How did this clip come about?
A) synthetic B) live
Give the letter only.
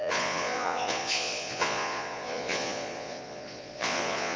A